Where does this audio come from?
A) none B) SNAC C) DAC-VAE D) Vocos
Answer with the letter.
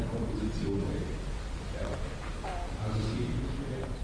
A